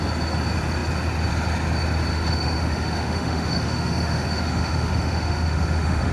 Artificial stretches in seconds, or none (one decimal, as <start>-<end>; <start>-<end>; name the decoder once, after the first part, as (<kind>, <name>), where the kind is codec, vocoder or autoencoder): 2.1-6.1 (autoencoder, DAC-VAE)